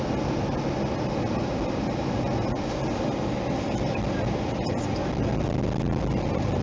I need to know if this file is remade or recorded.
recorded